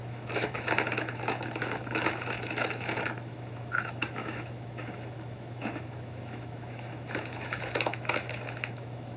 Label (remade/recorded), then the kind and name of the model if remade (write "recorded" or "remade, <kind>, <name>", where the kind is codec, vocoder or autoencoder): remade, autoencoder, DAC-VAE